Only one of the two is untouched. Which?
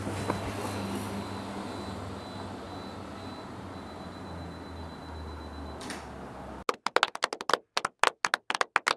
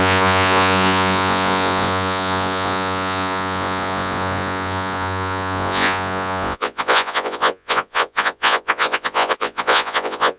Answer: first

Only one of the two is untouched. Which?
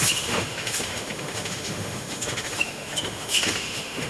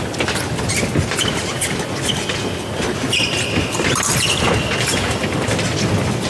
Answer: second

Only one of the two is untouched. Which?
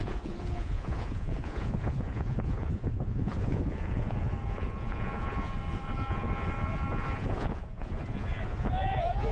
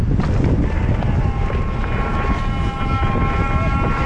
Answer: second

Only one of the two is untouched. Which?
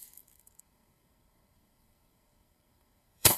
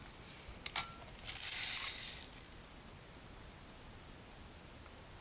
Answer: second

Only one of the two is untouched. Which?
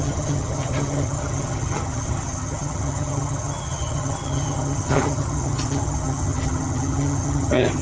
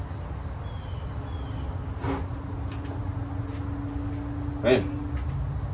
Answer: second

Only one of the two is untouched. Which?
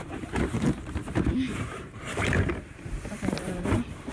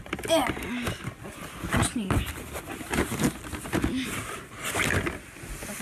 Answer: second